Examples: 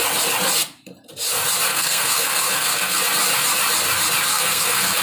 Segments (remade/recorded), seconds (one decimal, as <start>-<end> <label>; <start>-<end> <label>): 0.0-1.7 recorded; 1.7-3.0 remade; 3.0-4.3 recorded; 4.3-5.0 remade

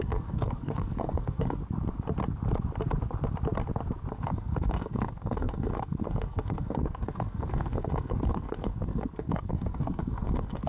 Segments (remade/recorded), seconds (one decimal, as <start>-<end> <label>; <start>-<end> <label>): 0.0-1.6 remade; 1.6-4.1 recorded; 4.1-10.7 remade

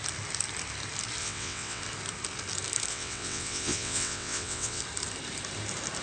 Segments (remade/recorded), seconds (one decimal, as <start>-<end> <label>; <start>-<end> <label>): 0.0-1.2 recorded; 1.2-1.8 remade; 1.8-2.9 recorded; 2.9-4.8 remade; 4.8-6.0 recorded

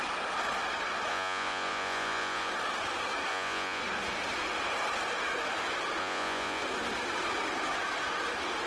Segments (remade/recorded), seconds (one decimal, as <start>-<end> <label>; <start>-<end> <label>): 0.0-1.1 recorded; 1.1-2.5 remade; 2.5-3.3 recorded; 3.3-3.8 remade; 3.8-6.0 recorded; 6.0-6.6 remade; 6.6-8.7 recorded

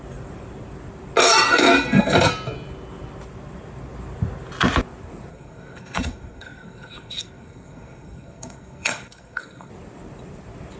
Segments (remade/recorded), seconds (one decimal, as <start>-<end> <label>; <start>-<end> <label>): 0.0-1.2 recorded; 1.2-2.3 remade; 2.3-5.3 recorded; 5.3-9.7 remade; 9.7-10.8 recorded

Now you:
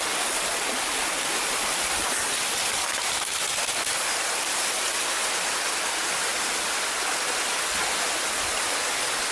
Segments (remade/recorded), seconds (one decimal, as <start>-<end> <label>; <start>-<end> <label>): 0.0-9.3 recorded